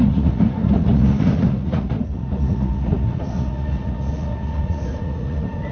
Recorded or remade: remade